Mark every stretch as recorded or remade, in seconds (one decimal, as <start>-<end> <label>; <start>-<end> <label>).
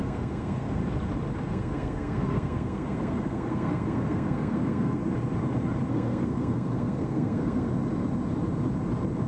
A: 0.0-0.8 remade; 0.8-1.5 recorded; 1.5-5.0 remade; 5.0-5.9 recorded; 5.9-7.7 remade; 7.7-9.3 recorded